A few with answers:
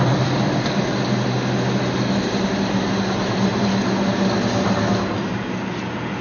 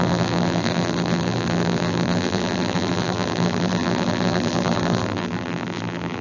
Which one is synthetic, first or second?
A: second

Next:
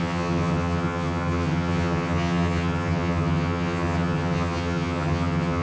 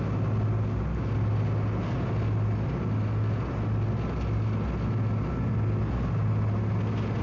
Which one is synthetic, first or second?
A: first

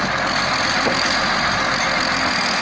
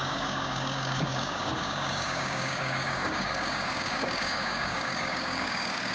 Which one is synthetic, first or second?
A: second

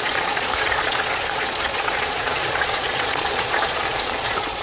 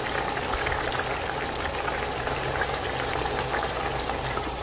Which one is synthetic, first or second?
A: first